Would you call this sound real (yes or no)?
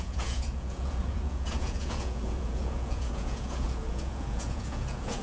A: no